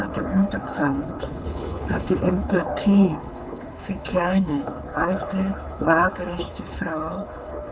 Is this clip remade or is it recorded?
remade